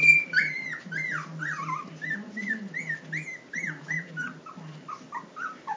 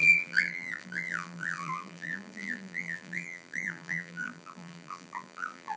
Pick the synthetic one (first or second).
second